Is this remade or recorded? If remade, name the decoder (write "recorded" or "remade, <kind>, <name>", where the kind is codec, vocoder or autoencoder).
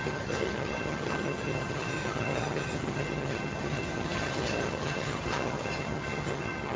remade, vocoder, HiFi-GAN